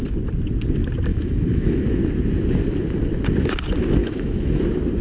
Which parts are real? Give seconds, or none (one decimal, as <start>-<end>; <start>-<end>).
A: 0.0-1.1; 1.8-4.0; 4.6-5.0